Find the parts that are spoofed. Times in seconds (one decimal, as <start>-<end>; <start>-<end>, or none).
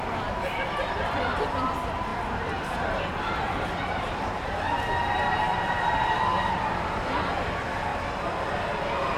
0.0-7.9; 8.5-9.2